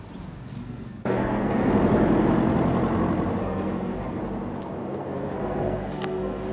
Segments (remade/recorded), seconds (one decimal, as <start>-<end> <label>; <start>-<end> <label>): 0.0-0.5 recorded; 0.5-1.7 remade; 1.7-3.4 recorded; 3.4-4.2 remade; 4.2-4.8 recorded; 4.8-6.5 remade